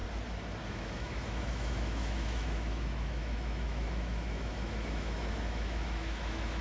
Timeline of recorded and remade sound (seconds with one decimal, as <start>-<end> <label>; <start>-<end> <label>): 0.0-0.7 recorded; 0.7-6.6 remade